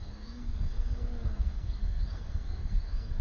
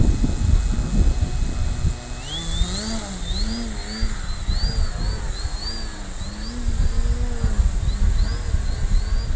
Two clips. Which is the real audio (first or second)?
second